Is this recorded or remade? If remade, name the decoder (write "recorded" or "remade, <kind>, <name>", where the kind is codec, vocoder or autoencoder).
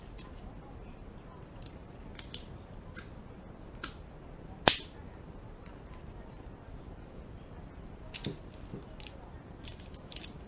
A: recorded